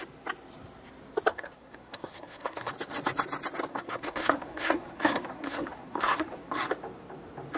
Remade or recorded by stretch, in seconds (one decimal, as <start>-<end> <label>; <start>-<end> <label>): 0.0-1.3 recorded; 1.3-2.7 remade; 2.7-3.7 recorded; 3.7-6.5 remade; 6.5-7.6 recorded